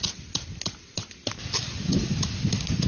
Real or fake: real